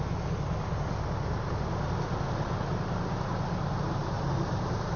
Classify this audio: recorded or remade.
recorded